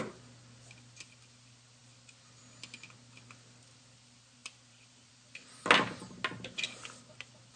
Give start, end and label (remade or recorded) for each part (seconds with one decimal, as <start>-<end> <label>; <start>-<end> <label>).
0.0-4.4 recorded; 4.4-5.1 remade; 5.1-7.6 recorded